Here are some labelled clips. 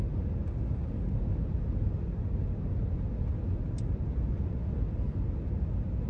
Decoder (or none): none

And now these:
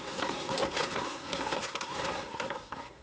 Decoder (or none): codec, SNAC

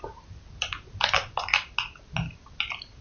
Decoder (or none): none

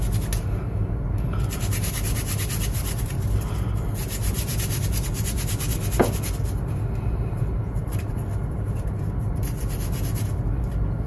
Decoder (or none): none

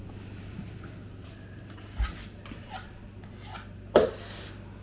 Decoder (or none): none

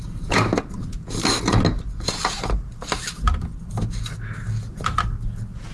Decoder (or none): none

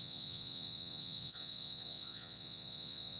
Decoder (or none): vocoder, Vocos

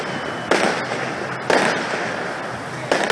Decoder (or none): none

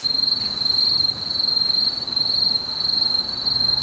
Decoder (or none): none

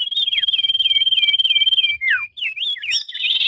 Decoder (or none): none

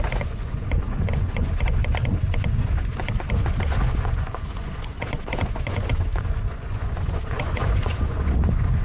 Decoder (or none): vocoder, Vocos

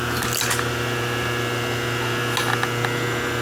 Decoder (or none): none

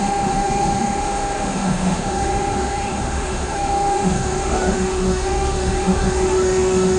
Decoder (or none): autoencoder, DAC-VAE